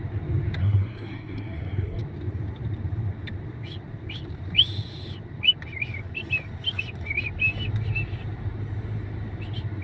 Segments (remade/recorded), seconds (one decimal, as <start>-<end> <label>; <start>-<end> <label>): 0.0-0.6 recorded; 0.6-2.0 remade; 2.0-9.8 recorded